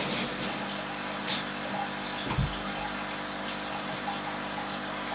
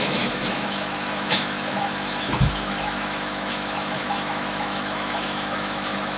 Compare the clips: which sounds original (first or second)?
first